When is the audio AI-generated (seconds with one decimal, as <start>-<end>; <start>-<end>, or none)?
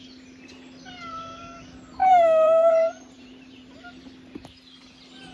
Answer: 2.0-4.1